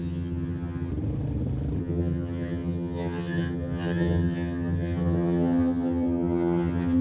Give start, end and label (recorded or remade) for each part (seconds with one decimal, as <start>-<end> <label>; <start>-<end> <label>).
0.0-0.9 remade; 0.9-1.8 recorded; 1.8-7.0 remade